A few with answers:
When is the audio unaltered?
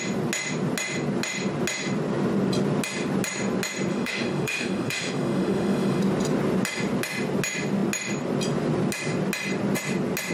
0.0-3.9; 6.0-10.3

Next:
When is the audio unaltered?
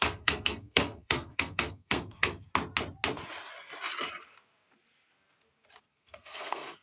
2.5-5.8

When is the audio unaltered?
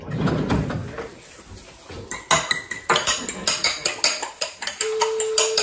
0.8-4.2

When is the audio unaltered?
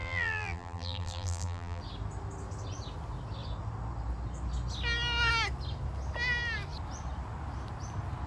1.8-8.3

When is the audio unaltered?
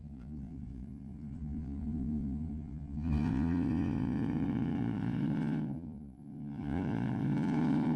none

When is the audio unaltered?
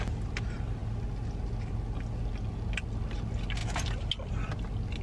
0.0-5.0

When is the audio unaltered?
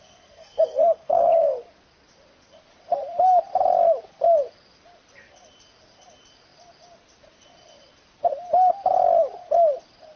1.3-10.2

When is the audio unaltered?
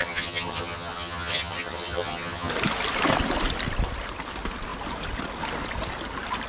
2.5-6.5